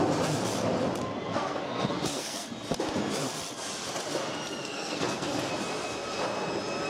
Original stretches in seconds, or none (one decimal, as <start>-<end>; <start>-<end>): 0.0-1.3; 2.5-4.6; 5.5-6.9